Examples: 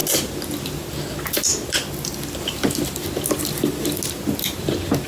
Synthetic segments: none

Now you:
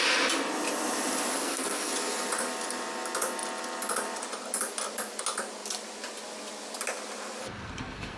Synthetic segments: 1.4-1.9 (codec, SNAC); 7.4-8.2

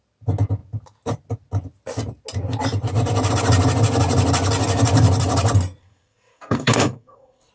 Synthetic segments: 5.8-7.5 (codec, SNAC)

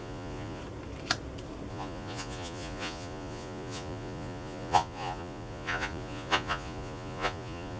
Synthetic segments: 0.0-0.6 (vocoder, Vocos); 1.7-7.8

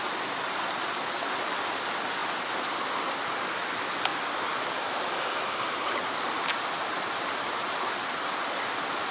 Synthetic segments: none

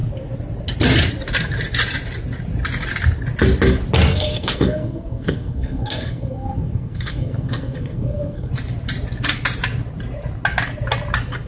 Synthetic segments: 4.1-8.5 (codec, SNAC)